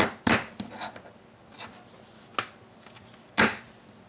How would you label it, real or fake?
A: real